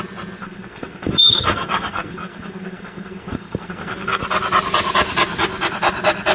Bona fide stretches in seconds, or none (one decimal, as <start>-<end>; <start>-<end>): 0.0-0.4; 4.2-6.3